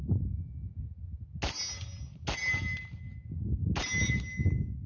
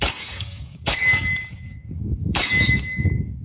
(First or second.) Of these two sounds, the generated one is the second